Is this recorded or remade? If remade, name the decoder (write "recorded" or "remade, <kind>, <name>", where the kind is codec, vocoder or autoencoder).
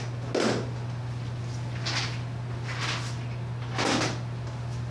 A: recorded